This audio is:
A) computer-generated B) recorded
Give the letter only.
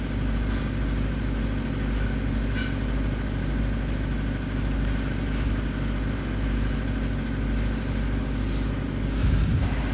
B